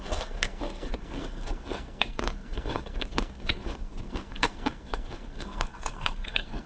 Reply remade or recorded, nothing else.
remade